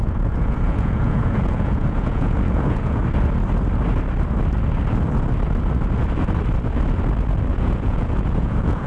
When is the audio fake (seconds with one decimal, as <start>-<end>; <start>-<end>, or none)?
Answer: 0.0-3.0; 7.5-8.9